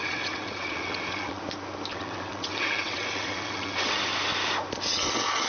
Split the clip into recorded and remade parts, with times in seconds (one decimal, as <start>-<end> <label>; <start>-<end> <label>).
0.0-1.4 remade; 1.4-1.9 recorded; 1.9-4.0 remade; 4.0-5.5 recorded